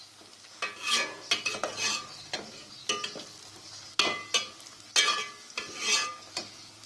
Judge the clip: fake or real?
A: real